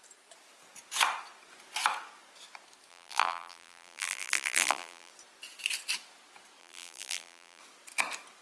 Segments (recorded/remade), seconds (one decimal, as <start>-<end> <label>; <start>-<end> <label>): 0.0-2.9 recorded; 2.9-5.1 remade; 5.1-6.6 recorded; 6.6-7.6 remade; 7.6-8.4 recorded